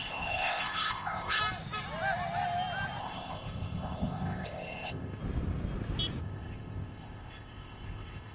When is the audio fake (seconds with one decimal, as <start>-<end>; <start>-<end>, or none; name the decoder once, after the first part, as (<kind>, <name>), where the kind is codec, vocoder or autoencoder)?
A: 0.0-1.4 (codec, ZipCodec); 3.0-5.2; 6.2-8.3